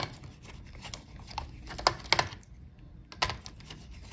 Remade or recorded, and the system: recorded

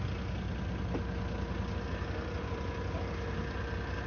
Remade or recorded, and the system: recorded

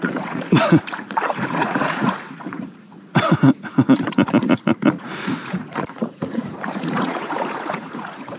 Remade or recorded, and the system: remade, vocoder, Vocos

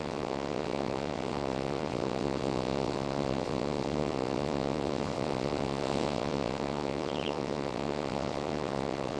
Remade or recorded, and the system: remade, vocoder, WaveNeXt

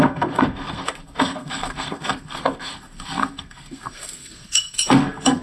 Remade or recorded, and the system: remade, codec, SNAC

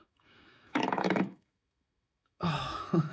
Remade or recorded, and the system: remade, autoencoder, DAC-VAE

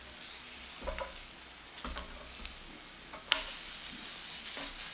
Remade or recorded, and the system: recorded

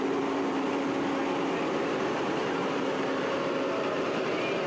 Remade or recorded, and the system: remade, vocoder, BigVGAN v2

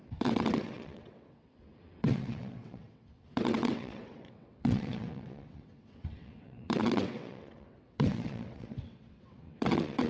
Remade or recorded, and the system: remade, vocoder, WaveNeXt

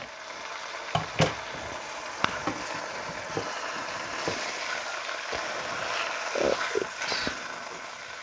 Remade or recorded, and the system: recorded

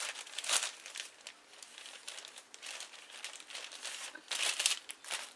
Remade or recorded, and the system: recorded